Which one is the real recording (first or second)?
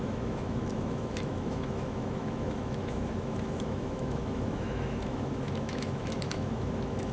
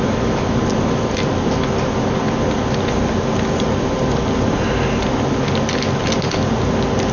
second